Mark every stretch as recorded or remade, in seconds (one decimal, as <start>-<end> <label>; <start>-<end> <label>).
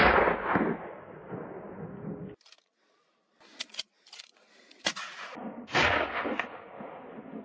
0.0-3.5 recorded; 3.5-4.2 remade; 4.2-4.7 recorded; 4.7-5.4 remade; 5.4-7.4 recorded